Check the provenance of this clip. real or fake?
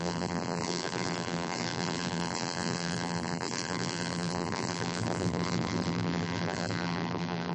fake